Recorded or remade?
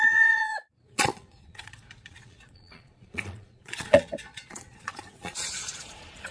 remade